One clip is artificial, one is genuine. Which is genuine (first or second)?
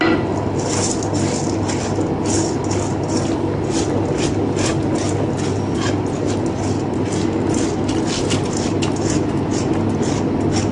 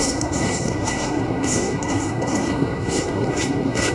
first